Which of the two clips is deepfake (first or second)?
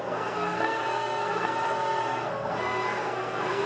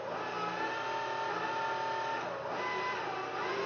first